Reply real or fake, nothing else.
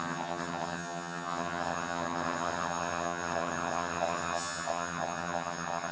fake